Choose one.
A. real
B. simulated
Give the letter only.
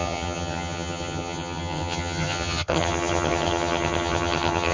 B